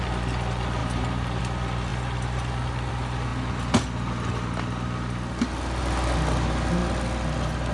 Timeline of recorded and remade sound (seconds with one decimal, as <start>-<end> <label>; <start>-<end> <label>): 0.0-0.8 recorded; 0.8-1.4 remade; 1.4-7.7 recorded